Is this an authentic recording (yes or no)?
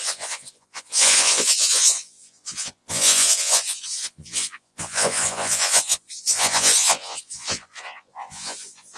no